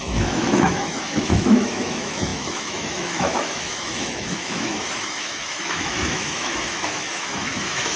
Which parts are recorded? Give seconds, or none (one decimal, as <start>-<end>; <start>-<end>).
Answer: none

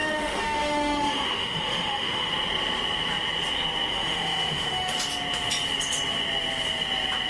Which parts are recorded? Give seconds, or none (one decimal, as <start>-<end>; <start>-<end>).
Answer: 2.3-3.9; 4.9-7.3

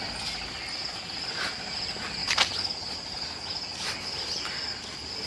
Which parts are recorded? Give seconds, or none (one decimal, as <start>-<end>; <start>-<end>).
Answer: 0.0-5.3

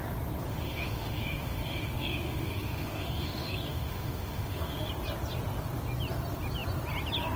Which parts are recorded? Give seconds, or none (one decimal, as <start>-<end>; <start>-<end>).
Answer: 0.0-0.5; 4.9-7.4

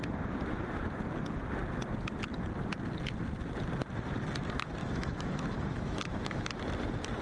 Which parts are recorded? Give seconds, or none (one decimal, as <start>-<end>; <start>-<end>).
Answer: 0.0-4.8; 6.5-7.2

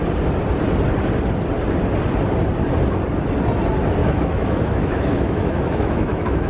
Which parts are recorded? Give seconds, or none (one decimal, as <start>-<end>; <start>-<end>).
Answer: 0.0-4.0